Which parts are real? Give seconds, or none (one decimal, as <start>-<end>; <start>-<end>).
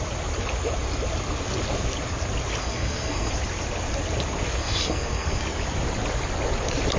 0.0-2.6; 3.3-4.6; 5.4-7.0